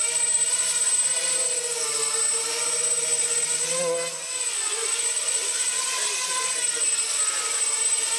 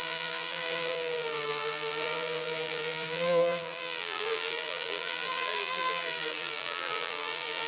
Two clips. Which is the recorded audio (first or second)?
first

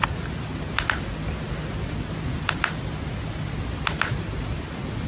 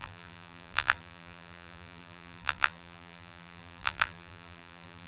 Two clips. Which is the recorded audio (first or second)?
first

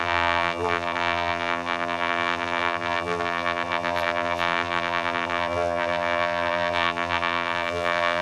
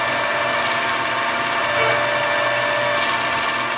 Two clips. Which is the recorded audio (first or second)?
second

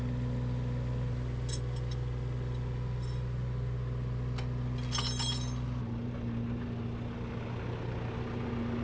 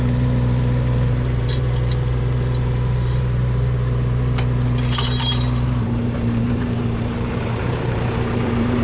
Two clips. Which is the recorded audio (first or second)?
first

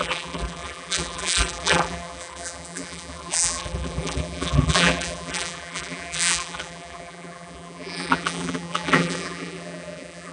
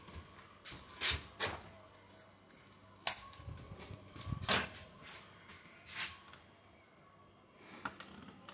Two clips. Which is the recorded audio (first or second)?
second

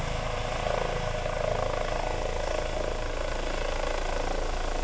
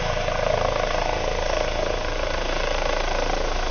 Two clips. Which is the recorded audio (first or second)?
first